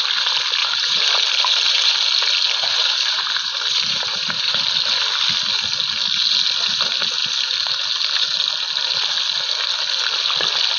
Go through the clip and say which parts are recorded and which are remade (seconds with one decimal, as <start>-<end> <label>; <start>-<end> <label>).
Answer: 0.0-0.6 recorded; 0.6-1.9 remade; 1.9-2.8 recorded; 2.8-4.6 remade; 4.6-10.8 recorded